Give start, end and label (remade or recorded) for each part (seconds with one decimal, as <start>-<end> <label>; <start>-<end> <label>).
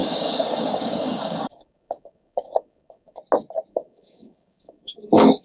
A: 0.0-3.2 remade; 3.2-3.7 recorded; 3.7-5.4 remade